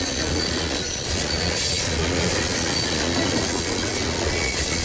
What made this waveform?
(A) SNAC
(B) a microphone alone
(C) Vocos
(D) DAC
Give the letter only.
C